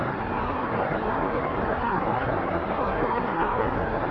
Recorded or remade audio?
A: remade